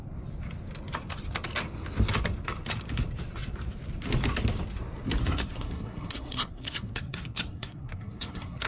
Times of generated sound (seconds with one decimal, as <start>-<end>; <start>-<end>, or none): 5.2-8.7